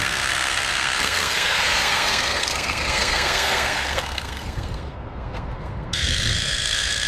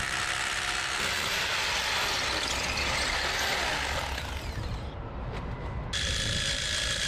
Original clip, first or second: second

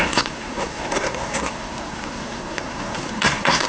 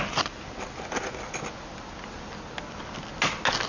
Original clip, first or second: second